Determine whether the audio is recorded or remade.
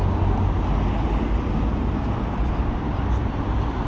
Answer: recorded